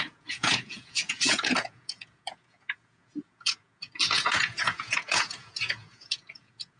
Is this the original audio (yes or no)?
no